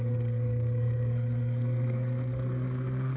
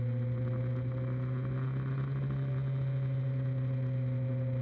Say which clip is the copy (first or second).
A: first